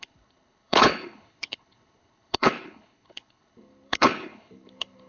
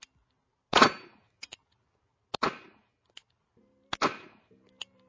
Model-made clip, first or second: first